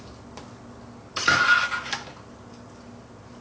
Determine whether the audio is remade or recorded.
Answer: recorded